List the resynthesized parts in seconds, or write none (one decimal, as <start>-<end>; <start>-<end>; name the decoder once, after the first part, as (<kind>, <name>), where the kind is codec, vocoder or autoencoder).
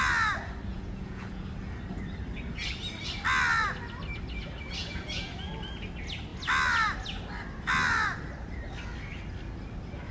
0.7-1.4 (vocoder, Vocos); 4.8-5.5